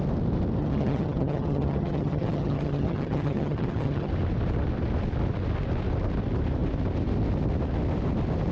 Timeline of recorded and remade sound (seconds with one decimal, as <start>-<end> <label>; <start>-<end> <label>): 0.0-0.6 recorded; 0.6-4.1 remade; 4.1-8.5 recorded